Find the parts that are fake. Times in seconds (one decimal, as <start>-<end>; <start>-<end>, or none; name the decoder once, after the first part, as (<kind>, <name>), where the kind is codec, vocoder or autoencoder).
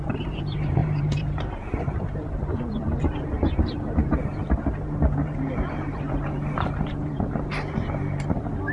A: 0.0-8.7 (vocoder, BigVGAN v2)